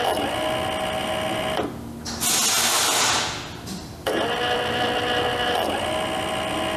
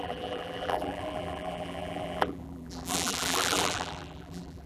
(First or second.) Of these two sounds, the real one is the first